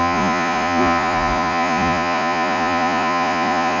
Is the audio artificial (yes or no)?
yes